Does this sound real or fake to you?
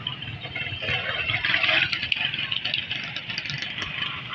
real